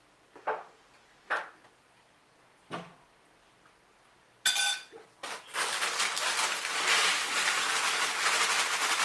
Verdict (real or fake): real